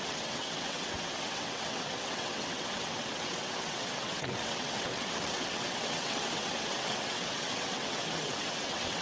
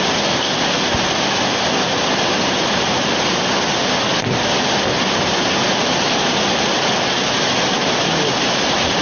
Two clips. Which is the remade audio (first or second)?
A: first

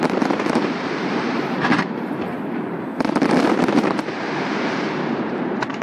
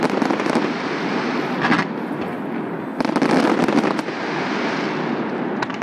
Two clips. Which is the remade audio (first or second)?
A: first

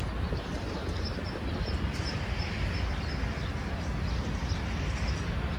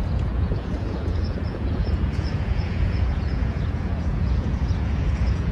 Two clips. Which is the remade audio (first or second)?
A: second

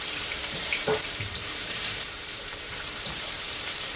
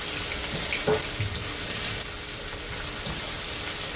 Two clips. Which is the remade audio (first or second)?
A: first